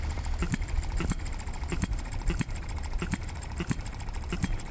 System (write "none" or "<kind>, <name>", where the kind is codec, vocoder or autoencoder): vocoder, BigVGAN v2